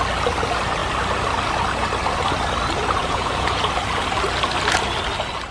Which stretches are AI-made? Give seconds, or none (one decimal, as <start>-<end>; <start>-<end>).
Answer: 3.0-3.7